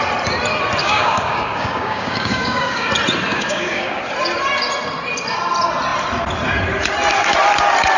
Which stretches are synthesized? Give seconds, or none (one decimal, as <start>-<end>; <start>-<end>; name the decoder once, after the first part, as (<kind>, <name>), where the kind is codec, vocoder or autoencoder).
0.8-2.9 (codec, DAC); 3.3-4.0